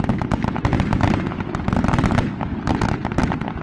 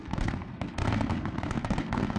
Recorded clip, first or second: first